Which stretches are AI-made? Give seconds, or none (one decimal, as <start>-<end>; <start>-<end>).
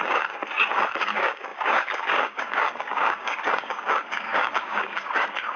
0.0-0.4; 1.0-5.6